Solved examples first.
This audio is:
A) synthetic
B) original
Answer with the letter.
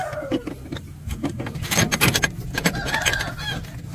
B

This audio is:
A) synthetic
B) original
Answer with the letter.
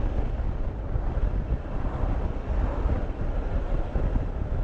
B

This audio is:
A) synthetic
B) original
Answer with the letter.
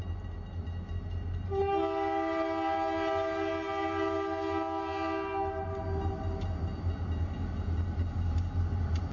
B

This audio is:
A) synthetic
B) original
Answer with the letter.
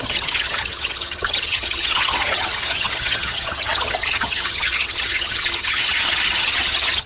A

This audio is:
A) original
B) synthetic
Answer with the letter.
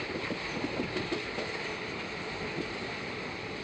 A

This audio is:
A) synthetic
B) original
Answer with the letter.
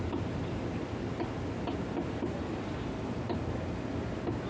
B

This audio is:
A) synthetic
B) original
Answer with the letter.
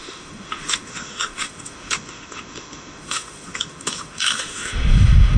A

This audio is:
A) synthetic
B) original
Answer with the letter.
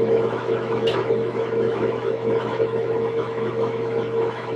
A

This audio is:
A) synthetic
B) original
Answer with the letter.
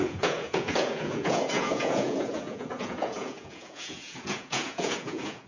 A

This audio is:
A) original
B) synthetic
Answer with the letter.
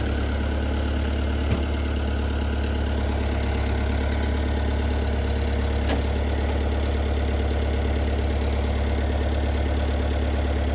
A